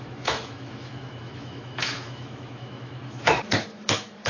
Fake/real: fake